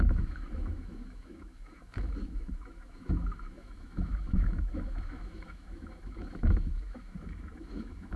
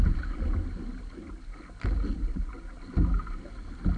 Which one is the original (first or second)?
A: second